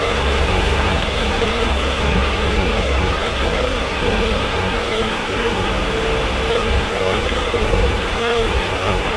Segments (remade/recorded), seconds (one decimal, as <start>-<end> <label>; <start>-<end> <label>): 0.0-5.7 remade; 5.7-6.5 recorded; 6.5-9.2 remade